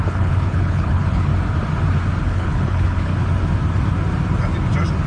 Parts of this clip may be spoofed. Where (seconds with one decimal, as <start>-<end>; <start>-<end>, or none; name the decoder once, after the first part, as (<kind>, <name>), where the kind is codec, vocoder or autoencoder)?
0.0-1.3 (codec, HILCodec); 2.2-3.1